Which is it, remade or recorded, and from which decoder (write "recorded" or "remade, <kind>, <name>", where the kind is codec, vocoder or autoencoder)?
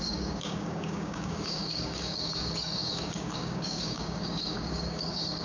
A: remade, codec, DAC